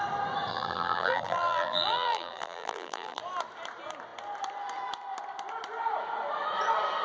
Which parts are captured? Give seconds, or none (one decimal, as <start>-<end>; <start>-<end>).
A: 0.0-0.5; 3.2-7.0